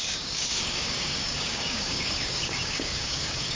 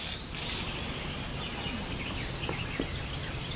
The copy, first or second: first